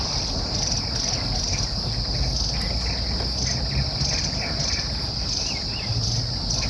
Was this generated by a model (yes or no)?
no